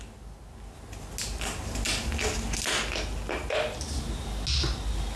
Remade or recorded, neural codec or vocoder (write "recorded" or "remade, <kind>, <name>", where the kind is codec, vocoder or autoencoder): recorded